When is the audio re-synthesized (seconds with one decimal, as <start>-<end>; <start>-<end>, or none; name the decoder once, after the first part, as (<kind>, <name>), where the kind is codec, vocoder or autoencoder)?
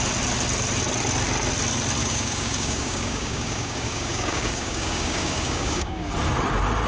2.0-6.1 (codec, DAC)